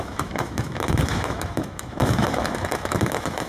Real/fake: fake